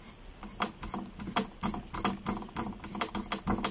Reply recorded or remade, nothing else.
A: recorded